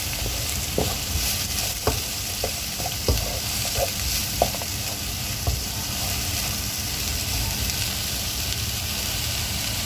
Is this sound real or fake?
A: fake